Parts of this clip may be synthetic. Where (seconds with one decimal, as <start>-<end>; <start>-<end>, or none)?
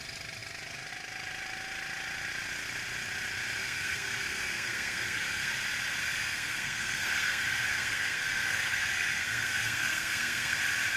3.6-5.5; 6.0-10.6